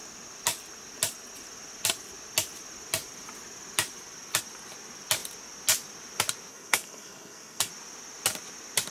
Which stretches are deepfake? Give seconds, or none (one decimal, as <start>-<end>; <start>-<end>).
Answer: 6.5-7.7